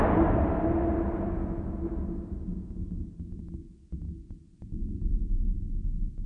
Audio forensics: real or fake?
real